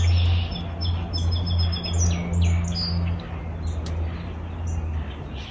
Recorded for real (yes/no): yes